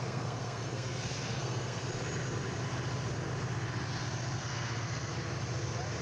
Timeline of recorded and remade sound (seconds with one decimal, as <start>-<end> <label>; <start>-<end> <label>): 0.0-1.8 remade; 1.8-4.4 recorded; 4.4-5.1 remade; 5.1-6.0 recorded